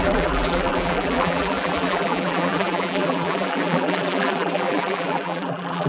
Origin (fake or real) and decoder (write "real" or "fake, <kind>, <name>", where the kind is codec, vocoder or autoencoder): fake, vocoder, BigVGAN v2